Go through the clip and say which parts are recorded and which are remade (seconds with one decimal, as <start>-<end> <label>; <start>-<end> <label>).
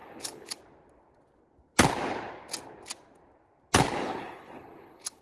0.0-0.6 remade; 0.6-4.0 recorded; 4.0-5.2 remade